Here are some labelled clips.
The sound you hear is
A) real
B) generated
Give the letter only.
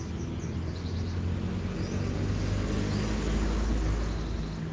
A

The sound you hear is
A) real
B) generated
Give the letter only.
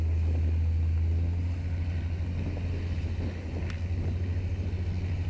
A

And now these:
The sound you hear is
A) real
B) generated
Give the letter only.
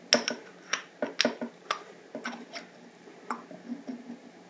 A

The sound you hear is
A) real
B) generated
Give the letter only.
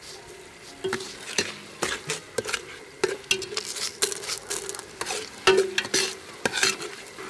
A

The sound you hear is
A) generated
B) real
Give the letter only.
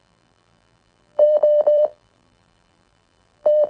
A